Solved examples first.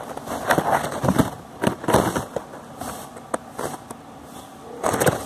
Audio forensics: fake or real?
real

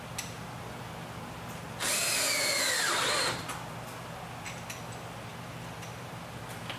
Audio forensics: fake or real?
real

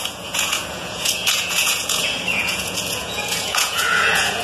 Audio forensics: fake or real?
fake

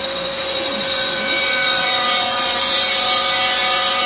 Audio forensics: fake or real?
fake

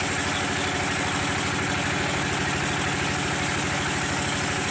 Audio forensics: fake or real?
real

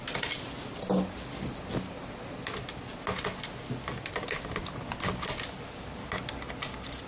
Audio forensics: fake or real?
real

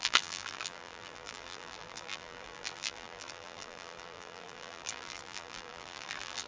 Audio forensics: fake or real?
fake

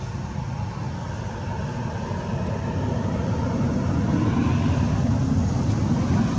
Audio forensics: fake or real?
real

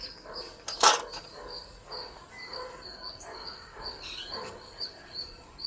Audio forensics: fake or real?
fake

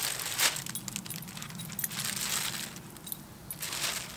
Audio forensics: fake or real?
real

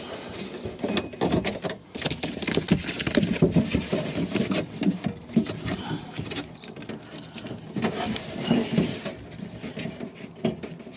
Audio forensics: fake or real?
real